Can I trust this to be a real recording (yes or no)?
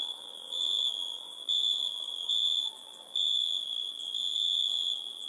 no